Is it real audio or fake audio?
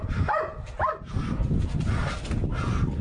real